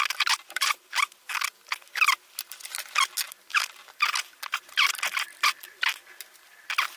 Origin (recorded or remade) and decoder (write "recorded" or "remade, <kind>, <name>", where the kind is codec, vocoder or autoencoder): recorded